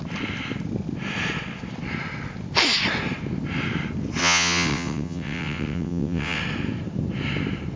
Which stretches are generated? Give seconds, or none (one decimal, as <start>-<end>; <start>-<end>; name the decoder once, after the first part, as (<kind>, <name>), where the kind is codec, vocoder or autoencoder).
4.2-6.4 (vocoder, WaveNeXt)